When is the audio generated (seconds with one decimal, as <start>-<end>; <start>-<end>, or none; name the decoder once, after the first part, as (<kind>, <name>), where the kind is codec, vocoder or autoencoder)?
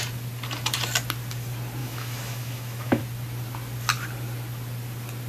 1.8-3.0 (autoencoder, DAC-VAE)